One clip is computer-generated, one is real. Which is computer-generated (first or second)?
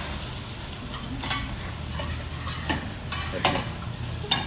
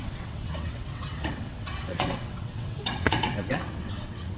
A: second